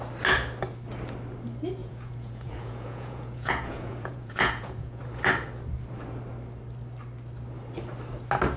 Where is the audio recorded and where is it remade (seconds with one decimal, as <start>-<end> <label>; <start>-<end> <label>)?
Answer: 0.0-1.8 recorded; 1.8-5.0 remade; 5.0-8.6 recorded